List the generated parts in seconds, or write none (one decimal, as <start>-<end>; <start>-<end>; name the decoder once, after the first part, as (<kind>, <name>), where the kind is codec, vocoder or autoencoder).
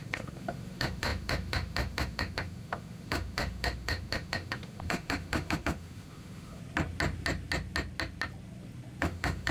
0.0-6.6 (autoencoder, DAC-VAE); 9.0-9.5